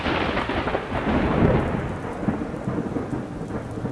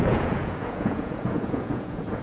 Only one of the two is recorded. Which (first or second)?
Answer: first